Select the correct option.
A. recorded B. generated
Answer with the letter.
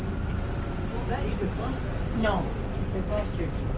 A